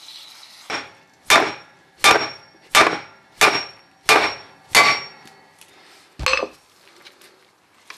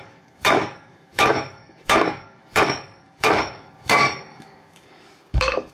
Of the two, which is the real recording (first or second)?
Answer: first